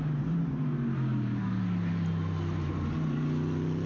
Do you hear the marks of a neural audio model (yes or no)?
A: no